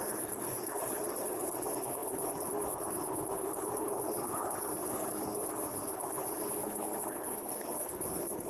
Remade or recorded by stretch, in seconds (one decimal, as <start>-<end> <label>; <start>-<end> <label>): 0.0-8.5 remade